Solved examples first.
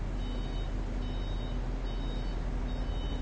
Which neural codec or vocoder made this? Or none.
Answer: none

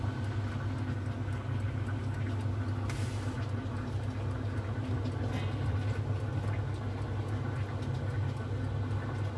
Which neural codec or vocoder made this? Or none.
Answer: none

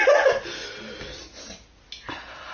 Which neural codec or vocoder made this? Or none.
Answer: none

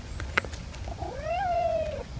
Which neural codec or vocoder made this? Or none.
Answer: vocoder, Vocos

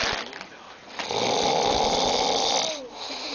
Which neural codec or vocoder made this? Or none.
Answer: none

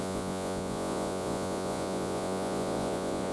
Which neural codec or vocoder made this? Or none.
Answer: vocoder, Vocos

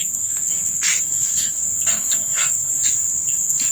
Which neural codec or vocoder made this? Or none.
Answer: codec, SNAC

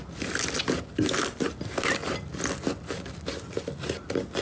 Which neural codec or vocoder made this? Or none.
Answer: none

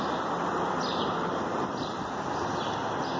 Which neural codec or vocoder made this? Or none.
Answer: none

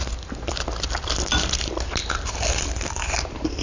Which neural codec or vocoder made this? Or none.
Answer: vocoder, BigVGAN v2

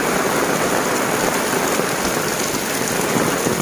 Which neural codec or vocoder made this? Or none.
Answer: none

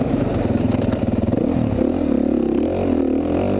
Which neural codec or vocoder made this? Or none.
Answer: none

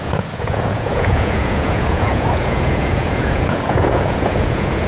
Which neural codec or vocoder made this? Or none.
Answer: vocoder, Vocos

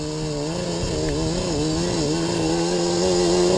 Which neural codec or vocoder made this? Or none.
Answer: none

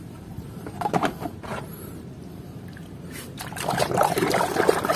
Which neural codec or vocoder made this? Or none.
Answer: vocoder, BigVGAN v2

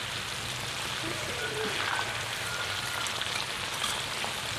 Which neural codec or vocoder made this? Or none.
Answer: none